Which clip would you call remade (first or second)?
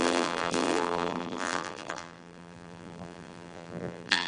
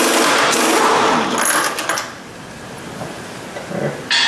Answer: first